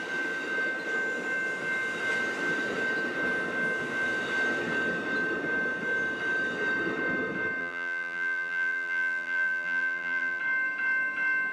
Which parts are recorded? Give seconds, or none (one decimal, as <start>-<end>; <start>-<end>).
0.0-7.6; 10.4-11.5